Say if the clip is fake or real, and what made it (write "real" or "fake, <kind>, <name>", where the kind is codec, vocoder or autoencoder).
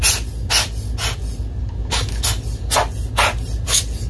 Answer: real